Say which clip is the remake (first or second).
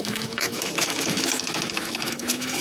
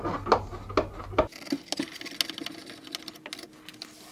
first